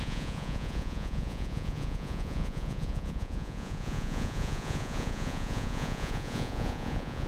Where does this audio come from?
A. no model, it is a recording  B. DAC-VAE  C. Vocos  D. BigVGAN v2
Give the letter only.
C